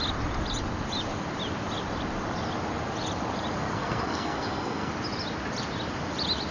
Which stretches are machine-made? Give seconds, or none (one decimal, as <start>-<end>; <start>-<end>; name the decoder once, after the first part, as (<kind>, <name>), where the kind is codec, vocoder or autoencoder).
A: 3.7-4.9 (codec, SNAC)